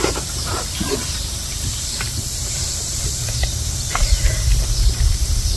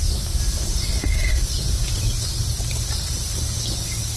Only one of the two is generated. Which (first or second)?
first